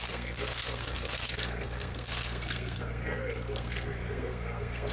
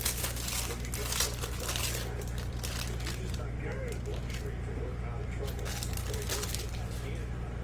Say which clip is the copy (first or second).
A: first